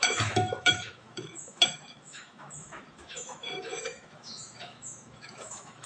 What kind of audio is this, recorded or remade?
remade